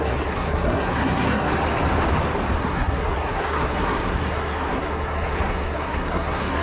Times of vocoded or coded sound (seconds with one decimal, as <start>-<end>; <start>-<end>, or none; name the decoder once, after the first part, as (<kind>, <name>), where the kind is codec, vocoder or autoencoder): 0.0-1.5 (codec, SNAC); 2.6-6.6